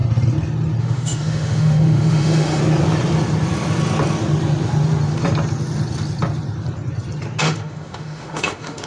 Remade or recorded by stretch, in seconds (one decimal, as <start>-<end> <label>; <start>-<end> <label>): 0.0-0.8 recorded; 0.8-2.6 remade; 2.6-7.4 recorded; 7.4-8.9 remade